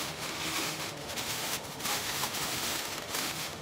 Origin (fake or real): fake